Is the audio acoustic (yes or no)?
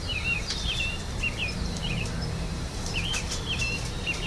no